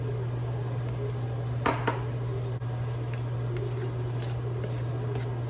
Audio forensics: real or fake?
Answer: real